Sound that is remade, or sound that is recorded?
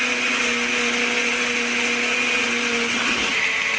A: recorded